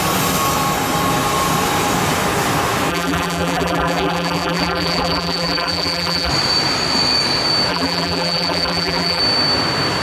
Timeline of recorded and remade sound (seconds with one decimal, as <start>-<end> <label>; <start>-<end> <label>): 0.0-2.9 recorded; 2.9-6.3 remade; 6.3-7.7 recorded; 7.7-9.2 remade; 9.2-10.0 recorded